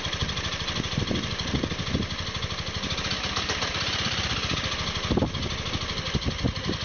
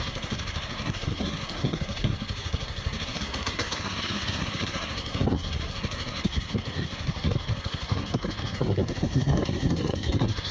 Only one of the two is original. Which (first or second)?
first